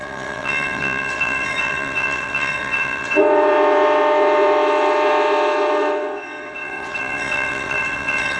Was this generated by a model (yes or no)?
yes